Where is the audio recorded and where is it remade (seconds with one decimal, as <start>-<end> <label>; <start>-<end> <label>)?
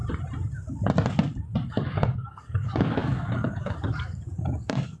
0.0-1.7 recorded; 1.7-5.0 remade